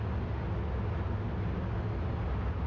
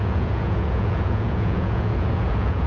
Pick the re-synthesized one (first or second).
second